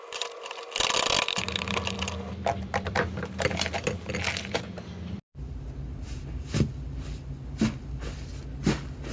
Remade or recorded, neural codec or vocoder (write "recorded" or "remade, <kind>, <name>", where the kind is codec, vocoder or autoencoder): recorded